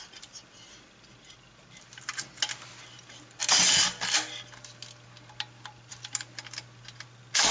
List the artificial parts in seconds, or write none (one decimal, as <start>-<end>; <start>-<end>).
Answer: none